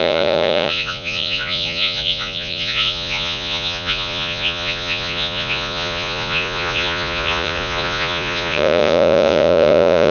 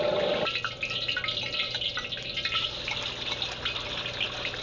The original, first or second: second